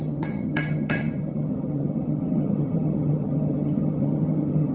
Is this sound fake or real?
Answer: fake